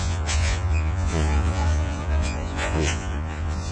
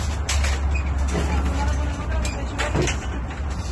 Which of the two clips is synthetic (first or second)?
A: first